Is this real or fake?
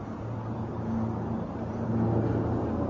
real